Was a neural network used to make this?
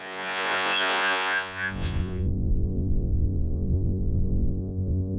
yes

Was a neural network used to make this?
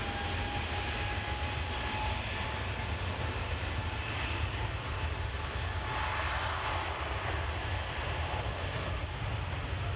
no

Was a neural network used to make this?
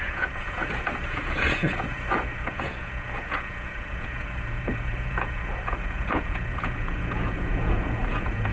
yes